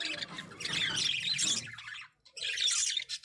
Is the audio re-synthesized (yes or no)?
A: no